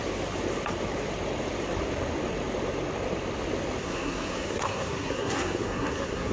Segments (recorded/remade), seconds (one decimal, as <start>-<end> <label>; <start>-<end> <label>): 0.0-3.8 recorded; 3.8-6.3 remade